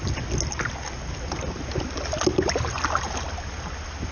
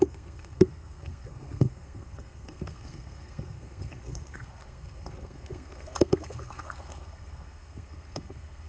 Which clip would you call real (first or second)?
first